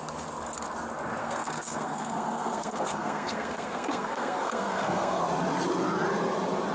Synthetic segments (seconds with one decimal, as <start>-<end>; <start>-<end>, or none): 1.2-5.2